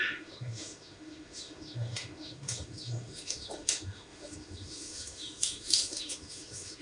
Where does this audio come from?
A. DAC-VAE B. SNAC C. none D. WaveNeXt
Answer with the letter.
A